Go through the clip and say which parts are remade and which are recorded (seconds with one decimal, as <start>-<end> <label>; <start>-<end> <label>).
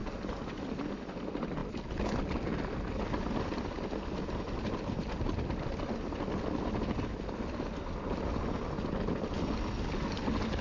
0.0-10.6 recorded